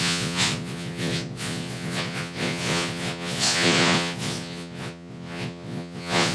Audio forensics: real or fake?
fake